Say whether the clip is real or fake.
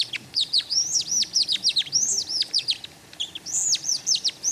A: real